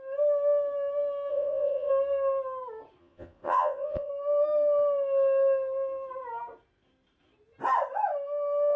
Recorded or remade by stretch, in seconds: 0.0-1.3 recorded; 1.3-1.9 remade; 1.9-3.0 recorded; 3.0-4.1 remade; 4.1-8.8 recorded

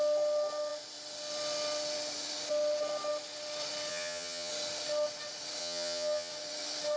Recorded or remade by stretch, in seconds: 0.0-3.9 recorded; 3.9-4.5 remade; 4.5-5.6 recorded; 5.6-6.3 remade; 6.3-7.0 recorded

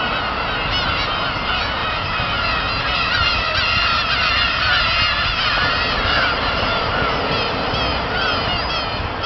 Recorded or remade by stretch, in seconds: 0.0-1.8 recorded; 1.8-4.8 remade; 4.8-7.9 recorded; 7.9-8.7 remade; 8.7-9.3 recorded

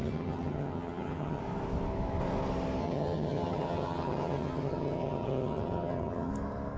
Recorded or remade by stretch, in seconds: 0.0-1.4 remade; 1.4-2.8 recorded; 2.8-6.3 remade; 6.3-6.8 recorded

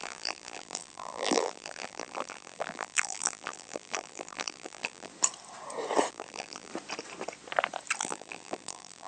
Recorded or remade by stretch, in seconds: 0.0-5.1 remade; 5.1-6.1 recorded; 6.1-6.7 remade; 6.7-8.0 recorded; 8.0-9.1 remade